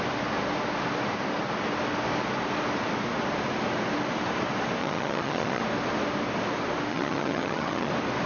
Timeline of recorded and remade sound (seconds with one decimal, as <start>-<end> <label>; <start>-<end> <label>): 0.0-4.8 recorded; 4.8-5.6 remade; 5.6-6.9 recorded; 6.9-7.9 remade; 7.9-8.3 recorded